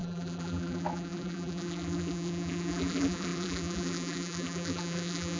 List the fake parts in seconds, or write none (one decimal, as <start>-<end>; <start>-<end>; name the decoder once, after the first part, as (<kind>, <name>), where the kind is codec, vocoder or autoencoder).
0.0-5.4 (vocoder, BigVGAN v2)